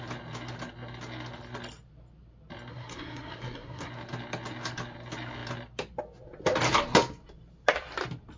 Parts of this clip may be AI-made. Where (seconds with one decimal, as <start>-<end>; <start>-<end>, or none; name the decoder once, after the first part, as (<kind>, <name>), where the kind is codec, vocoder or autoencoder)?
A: 2.7-3.9 (codec, SNAC)

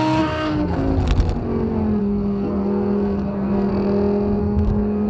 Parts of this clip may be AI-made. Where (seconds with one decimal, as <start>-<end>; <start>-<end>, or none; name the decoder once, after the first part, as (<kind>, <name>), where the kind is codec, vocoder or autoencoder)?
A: 0.0-0.9 (codec, SNAC); 2.0-3.7; 4.4-5.1

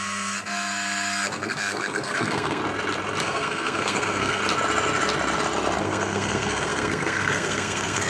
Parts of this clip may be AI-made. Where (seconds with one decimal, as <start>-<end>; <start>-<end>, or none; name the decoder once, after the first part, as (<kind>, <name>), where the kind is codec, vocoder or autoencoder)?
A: 0.0-2.6 (codec, SNAC); 3.2-4.4; 5.8-8.1

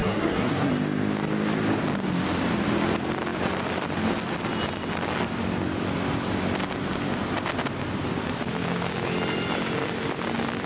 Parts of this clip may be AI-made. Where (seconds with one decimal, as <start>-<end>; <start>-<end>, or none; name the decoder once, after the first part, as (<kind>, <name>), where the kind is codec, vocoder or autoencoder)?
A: 0.0-0.7 (codec, SNAC)